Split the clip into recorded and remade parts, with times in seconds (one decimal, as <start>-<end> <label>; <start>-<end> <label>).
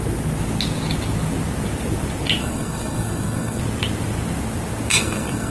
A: 0.0-2.4 recorded; 2.4-3.6 remade; 3.6-4.9 recorded; 4.9-5.5 remade